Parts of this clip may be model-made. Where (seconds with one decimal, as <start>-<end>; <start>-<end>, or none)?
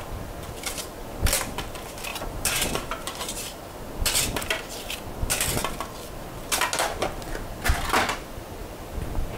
2.1-3.6